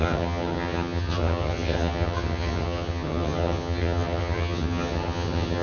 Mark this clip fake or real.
fake